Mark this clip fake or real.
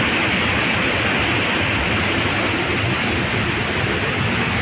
real